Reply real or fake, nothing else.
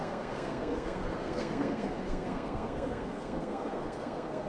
fake